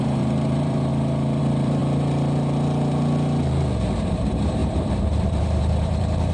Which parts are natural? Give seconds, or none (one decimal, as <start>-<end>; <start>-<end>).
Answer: 0.9-1.4; 1.8-4.1